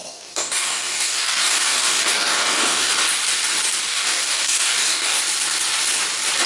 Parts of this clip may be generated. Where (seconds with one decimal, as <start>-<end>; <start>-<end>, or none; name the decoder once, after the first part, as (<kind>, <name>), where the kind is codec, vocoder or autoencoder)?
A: 0.0-2.9 (codec, DAC); 3.9-5.2